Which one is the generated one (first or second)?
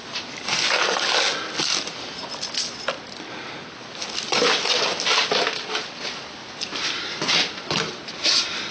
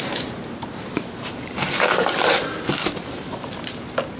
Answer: second